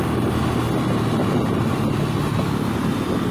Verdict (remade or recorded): recorded